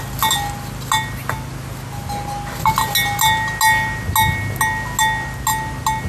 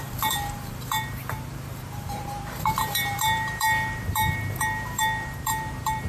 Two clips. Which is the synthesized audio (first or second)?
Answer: second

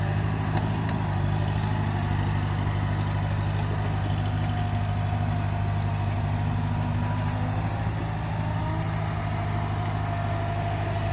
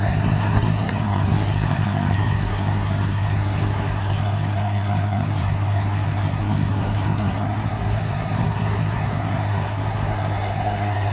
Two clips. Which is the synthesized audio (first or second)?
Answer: second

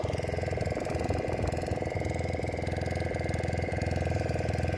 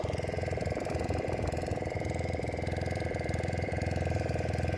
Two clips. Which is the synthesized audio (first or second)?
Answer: second